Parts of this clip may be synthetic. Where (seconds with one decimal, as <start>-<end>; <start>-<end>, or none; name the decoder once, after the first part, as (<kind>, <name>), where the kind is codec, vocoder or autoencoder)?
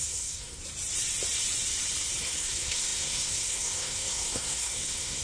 0.0-0.6 (codec, SNAC); 2.2-5.2